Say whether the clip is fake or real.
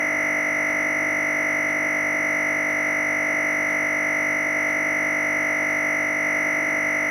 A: real